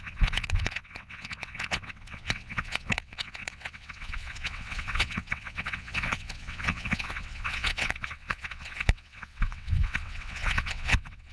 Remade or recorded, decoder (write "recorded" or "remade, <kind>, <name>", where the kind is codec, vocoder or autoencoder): remade, vocoder, WaveNeXt